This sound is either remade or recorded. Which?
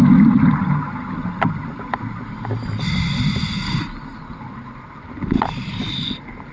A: recorded